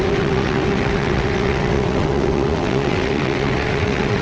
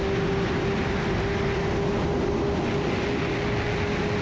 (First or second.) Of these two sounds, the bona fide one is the second